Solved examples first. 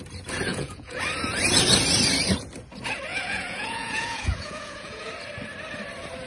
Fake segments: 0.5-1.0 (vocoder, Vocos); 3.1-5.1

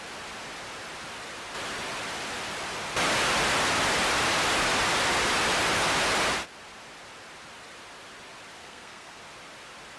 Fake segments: 8.6-9.2 (codec, SNAC)

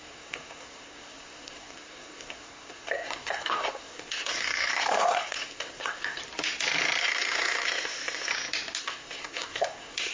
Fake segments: 0.0-6.2 (codec, SNAC); 7.0-8.3; 8.8-10.1

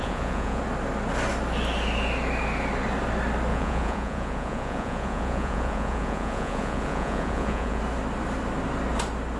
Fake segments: 0.0-0.6 (vocoder, Vocos); 3.5-7.8

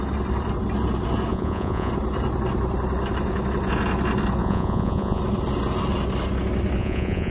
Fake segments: 1.3-1.9 (vocoder, Vocos); 4.4-5.2; 6.8-7.3

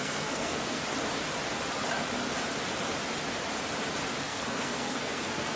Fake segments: 0.0-0.8 (codec, SNAC); 4.2-5.6

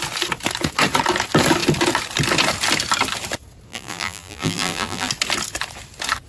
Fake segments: 3.7-5.1 (vocoder, BigVGAN v2)